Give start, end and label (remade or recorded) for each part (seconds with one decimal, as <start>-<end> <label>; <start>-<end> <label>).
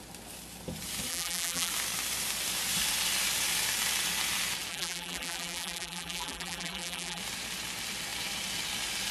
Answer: 0.0-1.1 recorded; 1.1-1.7 remade; 1.7-4.7 recorded; 4.7-7.2 remade; 7.2-9.1 recorded